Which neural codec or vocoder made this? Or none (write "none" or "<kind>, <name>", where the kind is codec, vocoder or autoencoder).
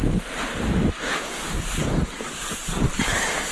none